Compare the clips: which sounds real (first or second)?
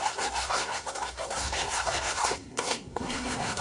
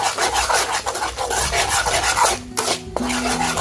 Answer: second